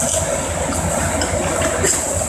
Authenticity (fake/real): real